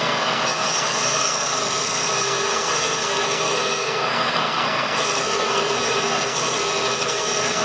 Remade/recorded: remade